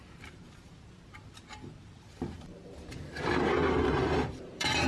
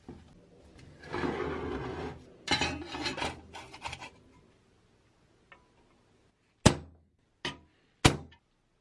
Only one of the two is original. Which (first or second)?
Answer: second